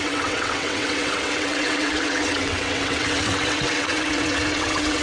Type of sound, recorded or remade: remade